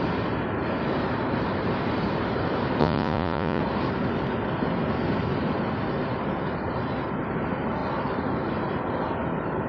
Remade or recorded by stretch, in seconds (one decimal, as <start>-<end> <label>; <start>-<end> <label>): 0.0-2.8 recorded; 2.8-3.6 remade; 3.6-9.7 recorded